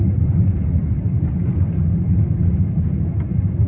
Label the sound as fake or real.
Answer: real